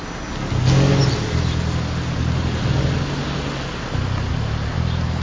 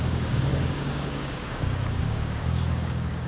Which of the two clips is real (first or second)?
first